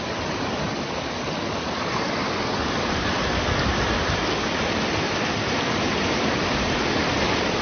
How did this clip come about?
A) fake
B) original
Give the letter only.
B